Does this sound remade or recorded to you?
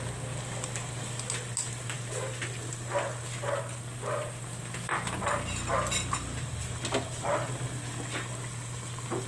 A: recorded